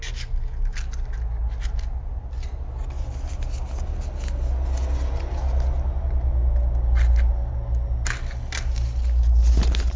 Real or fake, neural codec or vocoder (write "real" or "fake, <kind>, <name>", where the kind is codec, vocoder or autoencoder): real